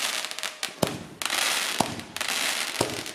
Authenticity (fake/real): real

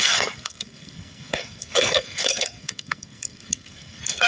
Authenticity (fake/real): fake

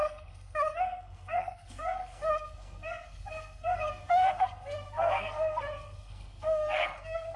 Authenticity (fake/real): fake